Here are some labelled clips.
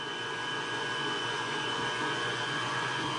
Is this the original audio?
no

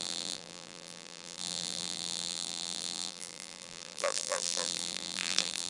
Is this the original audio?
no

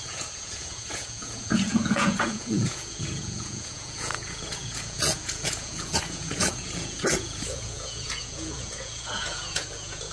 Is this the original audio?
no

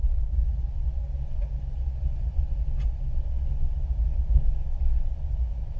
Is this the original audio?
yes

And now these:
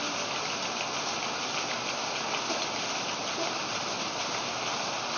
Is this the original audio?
yes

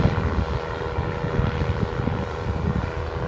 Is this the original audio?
yes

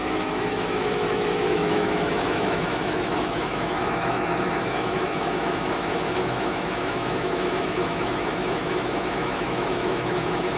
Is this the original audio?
no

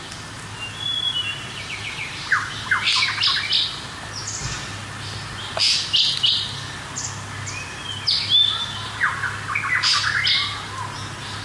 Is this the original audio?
yes